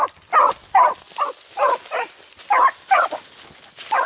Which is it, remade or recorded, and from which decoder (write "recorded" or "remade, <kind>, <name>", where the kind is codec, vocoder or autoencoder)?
recorded